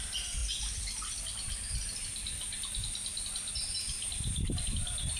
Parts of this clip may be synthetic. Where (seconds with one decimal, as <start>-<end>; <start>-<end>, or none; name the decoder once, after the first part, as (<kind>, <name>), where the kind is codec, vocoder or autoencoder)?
none